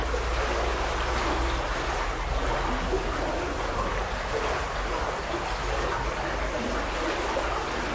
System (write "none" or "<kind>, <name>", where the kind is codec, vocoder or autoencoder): none